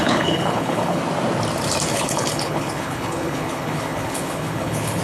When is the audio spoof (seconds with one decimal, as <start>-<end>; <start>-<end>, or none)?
0.0-1.0; 1.9-5.0